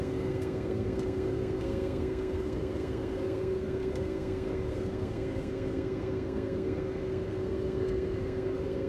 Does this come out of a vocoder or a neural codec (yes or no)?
yes